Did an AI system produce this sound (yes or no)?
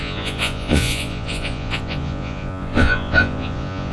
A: yes